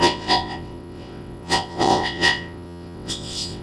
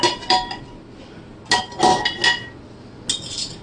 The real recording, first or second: second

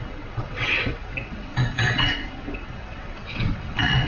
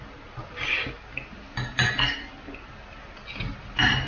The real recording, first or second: second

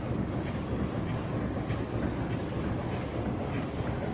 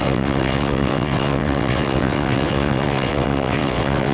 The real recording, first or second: first